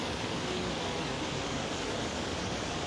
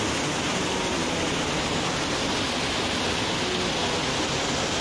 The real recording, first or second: second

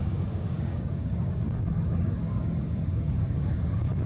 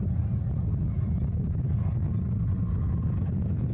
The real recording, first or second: second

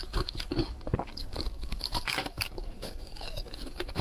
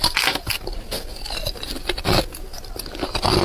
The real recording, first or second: second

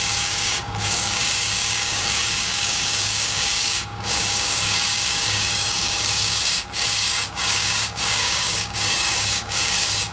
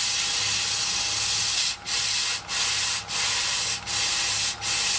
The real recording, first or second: second